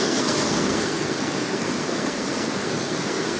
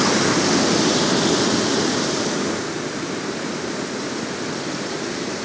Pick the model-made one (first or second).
first